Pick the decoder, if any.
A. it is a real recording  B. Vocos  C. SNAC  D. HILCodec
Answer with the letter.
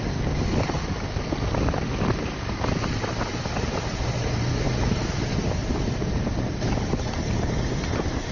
A